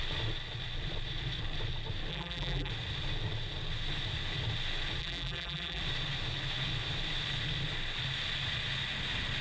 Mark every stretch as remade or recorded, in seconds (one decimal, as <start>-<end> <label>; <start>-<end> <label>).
0.0-2.1 recorded; 2.1-2.7 remade; 2.7-5.0 recorded; 5.0-5.8 remade; 5.8-9.4 recorded